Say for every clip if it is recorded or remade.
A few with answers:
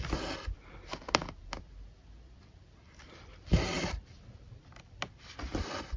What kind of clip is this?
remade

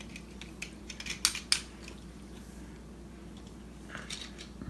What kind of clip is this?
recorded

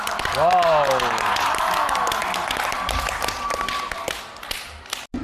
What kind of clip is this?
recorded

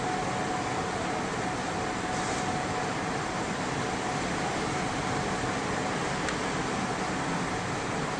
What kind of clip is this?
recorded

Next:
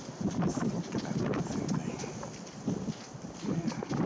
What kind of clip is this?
recorded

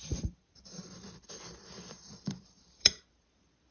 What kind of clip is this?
remade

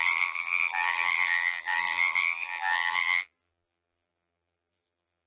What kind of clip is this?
remade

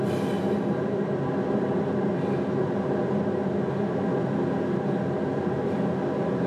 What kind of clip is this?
recorded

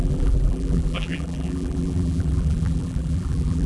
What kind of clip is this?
remade